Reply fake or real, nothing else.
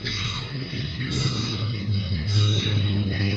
fake